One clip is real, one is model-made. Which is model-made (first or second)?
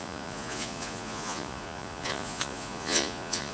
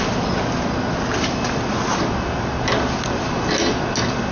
first